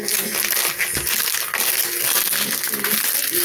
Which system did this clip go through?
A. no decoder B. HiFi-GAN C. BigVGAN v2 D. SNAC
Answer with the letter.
A